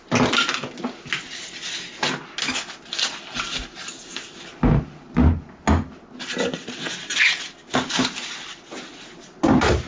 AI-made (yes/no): no